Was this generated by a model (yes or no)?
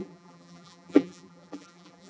yes